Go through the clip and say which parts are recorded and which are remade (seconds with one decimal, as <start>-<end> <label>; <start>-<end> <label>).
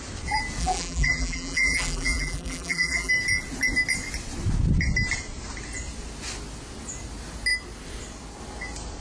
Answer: 0.0-0.6 recorded; 0.6-3.1 remade; 3.1-9.0 recorded